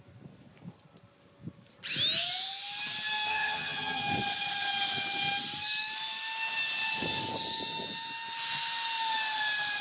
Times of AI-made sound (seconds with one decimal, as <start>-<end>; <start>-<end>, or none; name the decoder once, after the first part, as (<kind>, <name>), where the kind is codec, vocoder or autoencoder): 3.3-4.0 (vocoder, HiFi-GAN)